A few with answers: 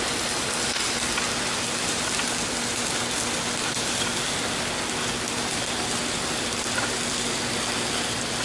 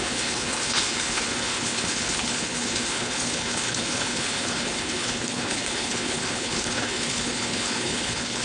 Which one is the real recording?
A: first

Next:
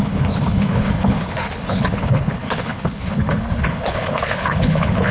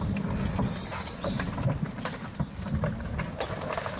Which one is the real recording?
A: second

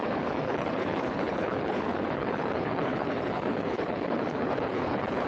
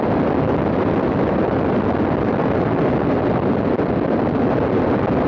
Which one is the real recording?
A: second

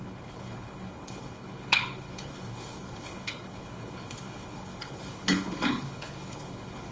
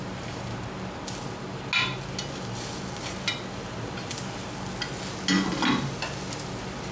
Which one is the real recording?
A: second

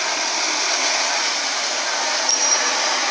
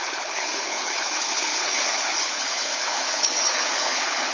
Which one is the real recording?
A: first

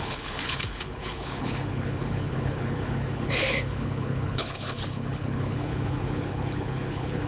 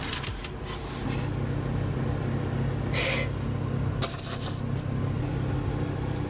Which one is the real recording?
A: second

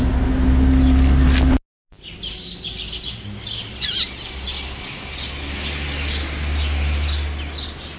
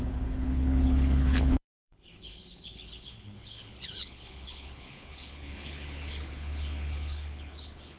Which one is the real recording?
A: first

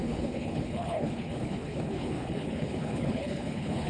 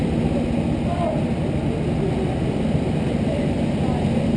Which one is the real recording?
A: second